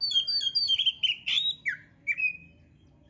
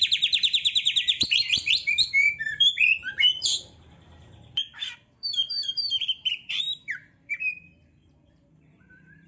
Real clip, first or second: first